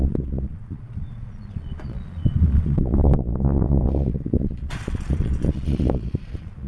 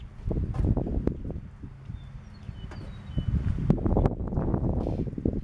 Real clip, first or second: second